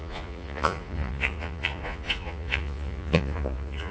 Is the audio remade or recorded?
remade